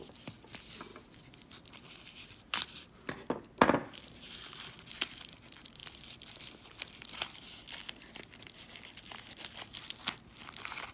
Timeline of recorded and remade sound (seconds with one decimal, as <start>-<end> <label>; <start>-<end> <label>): 0.0-10.9 recorded